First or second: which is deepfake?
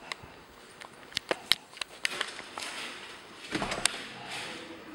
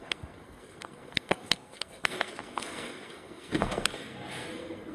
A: second